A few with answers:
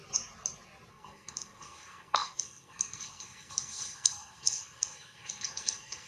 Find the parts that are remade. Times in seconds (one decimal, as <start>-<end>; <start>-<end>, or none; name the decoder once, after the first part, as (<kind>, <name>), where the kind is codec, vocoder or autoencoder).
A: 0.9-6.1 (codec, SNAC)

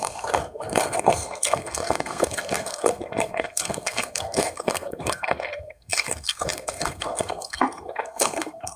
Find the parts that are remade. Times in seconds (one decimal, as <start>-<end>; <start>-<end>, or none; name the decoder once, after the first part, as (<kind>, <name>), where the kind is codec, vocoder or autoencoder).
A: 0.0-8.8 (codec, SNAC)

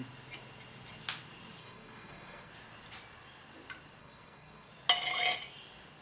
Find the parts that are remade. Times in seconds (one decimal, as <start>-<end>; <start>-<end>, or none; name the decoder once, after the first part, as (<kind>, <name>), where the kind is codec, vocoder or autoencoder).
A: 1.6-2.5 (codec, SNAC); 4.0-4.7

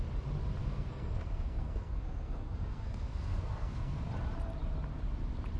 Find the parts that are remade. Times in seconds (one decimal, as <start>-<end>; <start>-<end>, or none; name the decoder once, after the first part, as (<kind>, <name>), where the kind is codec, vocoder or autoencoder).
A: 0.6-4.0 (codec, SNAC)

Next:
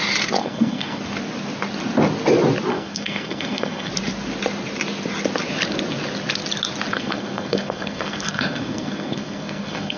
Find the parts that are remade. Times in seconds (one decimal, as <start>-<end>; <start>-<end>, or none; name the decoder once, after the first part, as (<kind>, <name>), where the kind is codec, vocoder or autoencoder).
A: 0.4-1.0 (codec, SNAC); 2.7-3.9; 6.9-10.0

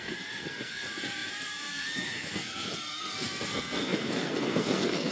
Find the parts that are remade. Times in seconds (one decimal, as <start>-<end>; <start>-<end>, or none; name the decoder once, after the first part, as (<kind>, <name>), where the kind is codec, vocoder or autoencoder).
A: 0.0-5.1 (codec, SNAC)

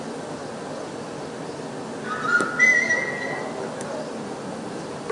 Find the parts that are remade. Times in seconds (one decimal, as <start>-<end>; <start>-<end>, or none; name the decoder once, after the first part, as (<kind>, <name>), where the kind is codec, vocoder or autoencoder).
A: none

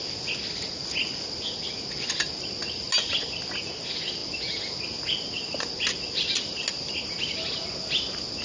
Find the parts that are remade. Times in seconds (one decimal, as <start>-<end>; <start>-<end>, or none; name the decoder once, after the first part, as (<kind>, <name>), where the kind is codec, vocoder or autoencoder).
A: none